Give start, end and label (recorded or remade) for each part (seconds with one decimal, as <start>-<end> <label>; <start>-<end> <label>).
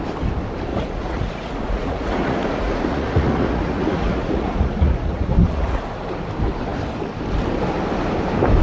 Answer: 0.0-0.7 recorded; 0.7-5.8 remade; 5.8-8.6 recorded